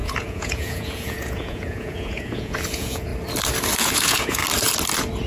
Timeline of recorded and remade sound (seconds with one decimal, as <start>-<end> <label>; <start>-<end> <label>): 0.0-3.1 remade; 3.1-3.8 recorded; 3.8-4.4 remade; 4.4-5.3 recorded